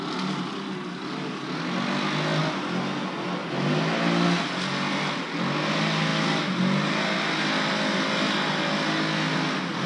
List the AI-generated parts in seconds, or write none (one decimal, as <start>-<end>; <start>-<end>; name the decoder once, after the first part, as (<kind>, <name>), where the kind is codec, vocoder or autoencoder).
none